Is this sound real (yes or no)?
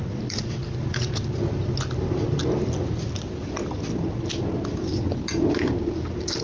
yes